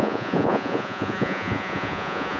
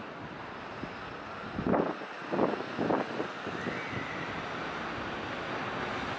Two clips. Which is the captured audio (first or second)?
second